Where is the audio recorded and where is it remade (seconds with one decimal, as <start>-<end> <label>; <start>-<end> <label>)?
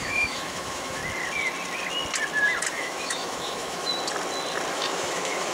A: 0.0-1.0 remade; 1.0-2.7 recorded; 2.7-3.9 remade; 3.9-4.7 recorded; 4.7-5.5 remade